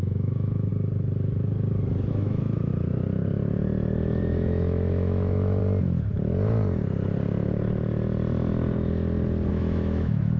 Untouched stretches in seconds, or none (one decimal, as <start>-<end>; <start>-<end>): 0.7-2.1; 2.7-4.2; 5.6-9.5